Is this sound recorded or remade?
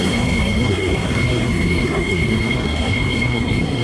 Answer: remade